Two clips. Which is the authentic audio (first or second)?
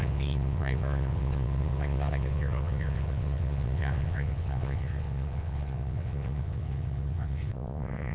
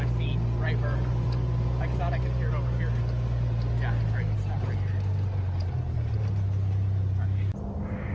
second